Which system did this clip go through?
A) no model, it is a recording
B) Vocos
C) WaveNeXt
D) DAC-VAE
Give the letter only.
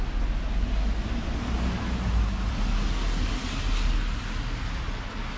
A